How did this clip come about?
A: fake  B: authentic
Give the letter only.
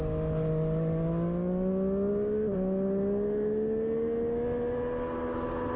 B